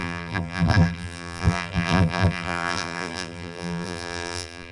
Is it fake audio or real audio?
fake